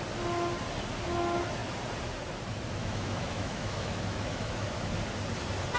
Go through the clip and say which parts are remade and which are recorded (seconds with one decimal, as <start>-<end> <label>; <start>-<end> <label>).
0.0-2.8 recorded; 2.8-4.9 remade; 4.9-5.8 recorded